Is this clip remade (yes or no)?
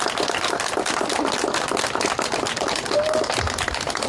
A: no